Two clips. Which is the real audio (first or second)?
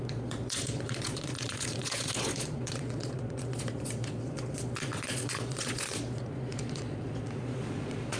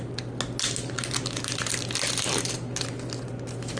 second